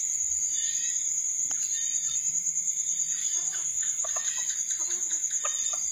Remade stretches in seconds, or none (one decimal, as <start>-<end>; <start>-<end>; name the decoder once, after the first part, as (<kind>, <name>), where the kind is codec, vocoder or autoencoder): 3.2-4.1 (codec, DAC)